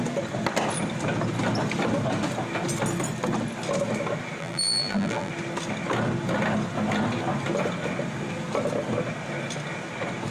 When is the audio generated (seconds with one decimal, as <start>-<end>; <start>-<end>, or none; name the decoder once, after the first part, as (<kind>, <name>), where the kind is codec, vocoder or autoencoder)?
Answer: 4.4-5.3 (vocoder, BigVGAN v2)